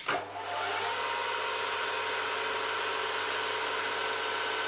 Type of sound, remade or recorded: recorded